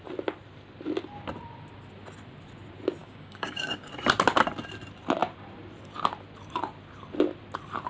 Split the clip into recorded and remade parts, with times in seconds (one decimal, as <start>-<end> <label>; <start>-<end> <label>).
0.0-3.0 recorded; 3.0-3.9 remade; 3.9-7.9 recorded